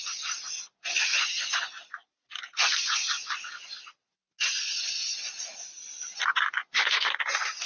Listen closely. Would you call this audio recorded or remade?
recorded